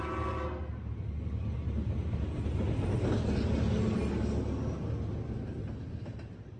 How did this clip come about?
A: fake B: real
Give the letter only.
B